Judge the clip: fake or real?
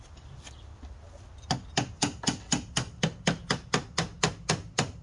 real